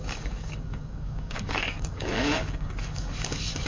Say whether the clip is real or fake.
fake